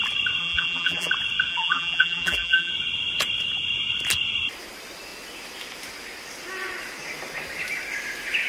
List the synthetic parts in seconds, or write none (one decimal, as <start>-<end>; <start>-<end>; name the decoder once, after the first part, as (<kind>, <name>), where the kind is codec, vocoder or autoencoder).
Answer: 0.4-1.1 (vocoder, BigVGAN v2); 1.5-2.7